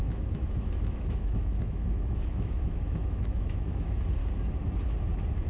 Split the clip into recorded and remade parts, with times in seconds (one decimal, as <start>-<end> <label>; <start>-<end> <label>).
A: 0.0-4.2 remade; 4.2-5.5 recorded